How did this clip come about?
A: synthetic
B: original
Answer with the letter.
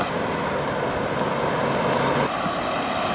B